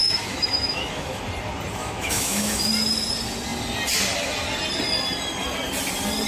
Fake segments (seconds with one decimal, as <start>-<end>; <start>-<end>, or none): 0.0-1.2; 1.8-2.7